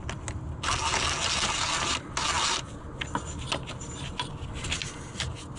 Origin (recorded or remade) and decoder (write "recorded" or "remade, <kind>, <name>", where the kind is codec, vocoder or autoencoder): recorded